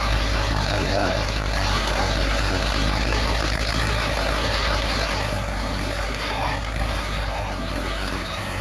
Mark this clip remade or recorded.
remade